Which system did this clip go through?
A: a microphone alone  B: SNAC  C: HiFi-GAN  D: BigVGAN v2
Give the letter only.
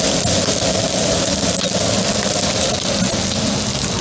A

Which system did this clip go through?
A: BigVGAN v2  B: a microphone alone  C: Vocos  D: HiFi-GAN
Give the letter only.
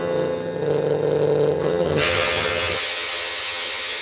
D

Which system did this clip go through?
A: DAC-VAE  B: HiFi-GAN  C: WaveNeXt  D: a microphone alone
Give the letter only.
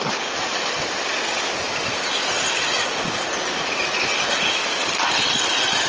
D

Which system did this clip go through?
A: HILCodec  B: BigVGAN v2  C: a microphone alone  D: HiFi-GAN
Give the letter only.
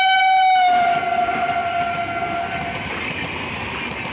C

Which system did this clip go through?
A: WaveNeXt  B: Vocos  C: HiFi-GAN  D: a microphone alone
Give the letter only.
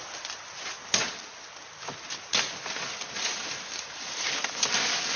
D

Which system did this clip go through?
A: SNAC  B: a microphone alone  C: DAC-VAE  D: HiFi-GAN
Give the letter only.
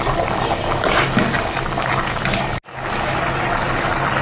B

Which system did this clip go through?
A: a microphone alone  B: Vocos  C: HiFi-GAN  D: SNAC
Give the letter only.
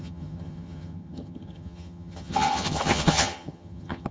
C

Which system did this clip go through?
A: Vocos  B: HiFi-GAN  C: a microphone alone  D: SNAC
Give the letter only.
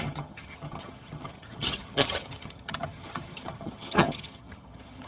B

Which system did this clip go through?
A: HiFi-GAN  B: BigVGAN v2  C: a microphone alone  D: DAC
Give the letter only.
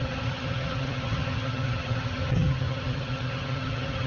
A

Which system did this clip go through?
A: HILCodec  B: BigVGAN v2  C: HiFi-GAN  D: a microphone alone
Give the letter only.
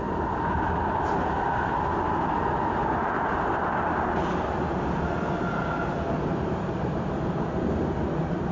D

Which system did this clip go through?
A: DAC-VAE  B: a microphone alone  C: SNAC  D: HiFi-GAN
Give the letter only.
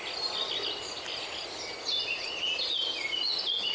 B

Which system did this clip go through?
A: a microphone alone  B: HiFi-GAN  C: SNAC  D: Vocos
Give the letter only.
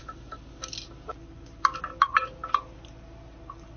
A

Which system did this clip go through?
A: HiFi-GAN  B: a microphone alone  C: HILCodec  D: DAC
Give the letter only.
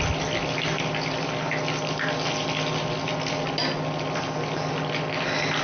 B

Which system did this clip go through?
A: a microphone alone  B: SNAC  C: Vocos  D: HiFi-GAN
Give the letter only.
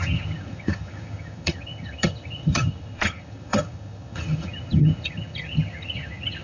D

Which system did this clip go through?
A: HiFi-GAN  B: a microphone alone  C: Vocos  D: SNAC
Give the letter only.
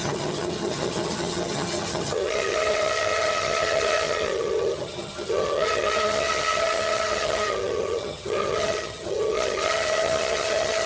A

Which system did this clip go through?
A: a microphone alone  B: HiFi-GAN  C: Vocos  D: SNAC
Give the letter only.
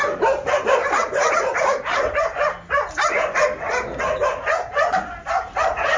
A